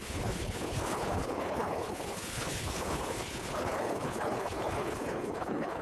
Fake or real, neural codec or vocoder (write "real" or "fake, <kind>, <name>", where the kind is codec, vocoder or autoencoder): fake, codec, HILCodec